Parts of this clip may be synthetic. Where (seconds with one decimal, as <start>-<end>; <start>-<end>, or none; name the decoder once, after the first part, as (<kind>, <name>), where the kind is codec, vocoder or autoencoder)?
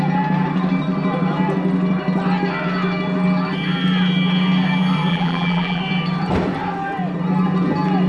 5.1-5.8 (vocoder, BigVGAN v2)